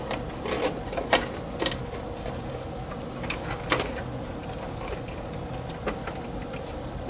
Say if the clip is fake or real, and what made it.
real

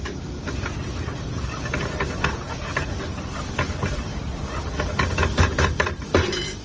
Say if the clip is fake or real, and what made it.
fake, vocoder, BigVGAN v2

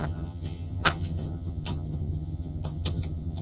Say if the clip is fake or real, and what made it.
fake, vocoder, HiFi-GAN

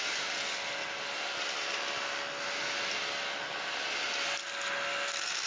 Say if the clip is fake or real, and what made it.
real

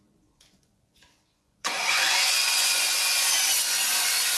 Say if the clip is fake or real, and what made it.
fake, vocoder, Vocos